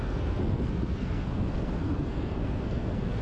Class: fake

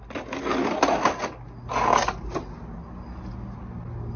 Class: real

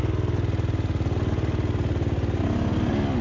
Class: real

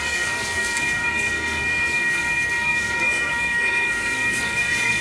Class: fake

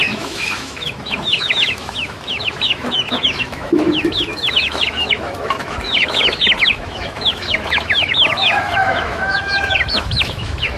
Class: fake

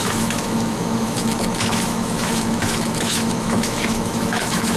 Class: fake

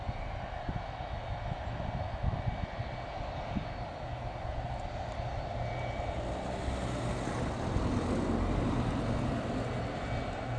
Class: real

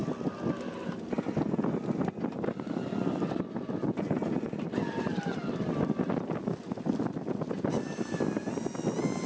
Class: real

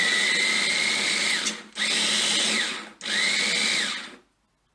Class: real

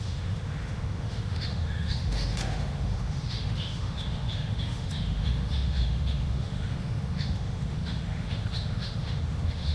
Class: fake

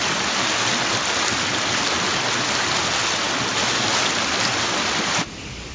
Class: real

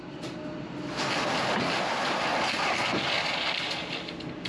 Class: real